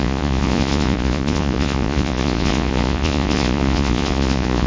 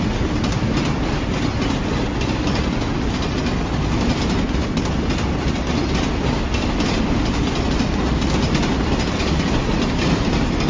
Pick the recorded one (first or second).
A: second